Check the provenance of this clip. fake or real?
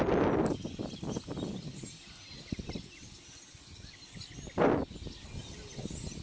real